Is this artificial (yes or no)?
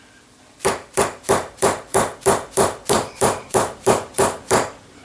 yes